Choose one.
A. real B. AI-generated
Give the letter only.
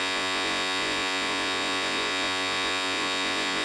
B